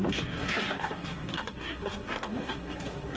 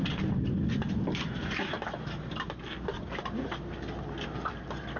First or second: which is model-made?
first